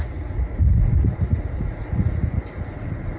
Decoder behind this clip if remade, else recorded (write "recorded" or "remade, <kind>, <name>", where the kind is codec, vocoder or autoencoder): remade, vocoder, Vocos